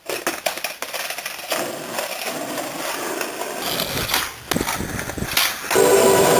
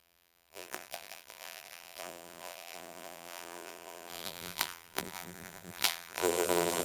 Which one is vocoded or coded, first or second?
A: second